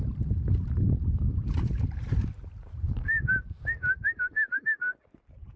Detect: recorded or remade remade